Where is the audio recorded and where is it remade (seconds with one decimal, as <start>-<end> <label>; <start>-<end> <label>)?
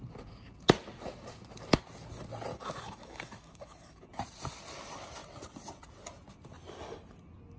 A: 0.0-2.5 recorded; 2.5-4.1 remade; 4.1-7.6 recorded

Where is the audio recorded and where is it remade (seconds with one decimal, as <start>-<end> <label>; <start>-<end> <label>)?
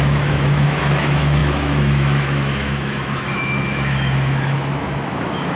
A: 0.0-5.6 remade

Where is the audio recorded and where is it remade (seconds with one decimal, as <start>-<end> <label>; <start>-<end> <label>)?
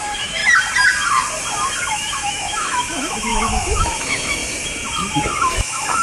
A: 0.0-0.4 remade; 0.4-1.9 recorded; 1.9-4.4 remade; 4.4-5.5 recorded; 5.5-6.0 remade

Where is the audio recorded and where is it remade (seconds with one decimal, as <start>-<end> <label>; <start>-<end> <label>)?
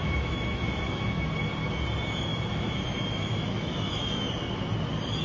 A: 0.0-1.3 remade; 1.3-2.3 recorded; 2.3-4.3 remade; 4.3-5.2 recorded